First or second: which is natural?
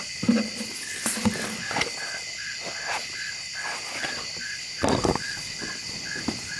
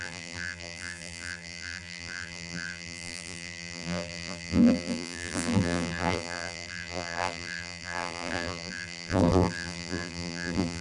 first